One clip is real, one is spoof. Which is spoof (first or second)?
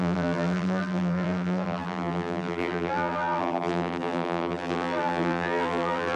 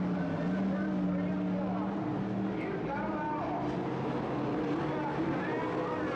first